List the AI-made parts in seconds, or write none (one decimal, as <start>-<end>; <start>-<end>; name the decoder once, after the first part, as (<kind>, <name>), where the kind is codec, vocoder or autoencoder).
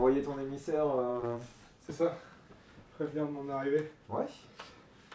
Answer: 1.1-1.9 (vocoder, Vocos)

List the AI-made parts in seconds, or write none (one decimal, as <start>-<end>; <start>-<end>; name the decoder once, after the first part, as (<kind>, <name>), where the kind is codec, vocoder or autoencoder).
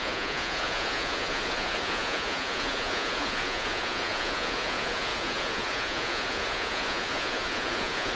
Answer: 0.0-8.2 (vocoder, Vocos)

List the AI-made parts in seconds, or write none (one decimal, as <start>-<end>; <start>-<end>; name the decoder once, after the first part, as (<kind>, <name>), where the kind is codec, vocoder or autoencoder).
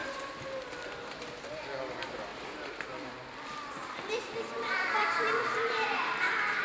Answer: 2.3-3.2 (vocoder, BigVGAN v2); 3.8-6.6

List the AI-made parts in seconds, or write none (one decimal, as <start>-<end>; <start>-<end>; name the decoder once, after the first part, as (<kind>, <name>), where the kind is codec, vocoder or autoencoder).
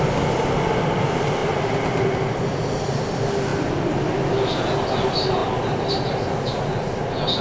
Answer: none